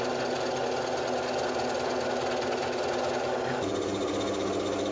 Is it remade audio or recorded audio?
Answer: recorded